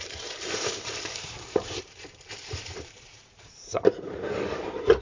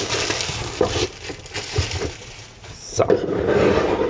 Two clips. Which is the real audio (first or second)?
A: second